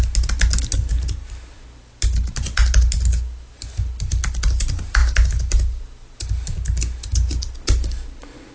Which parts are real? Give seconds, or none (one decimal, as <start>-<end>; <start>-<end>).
0.0-8.5